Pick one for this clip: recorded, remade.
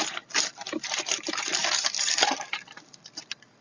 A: remade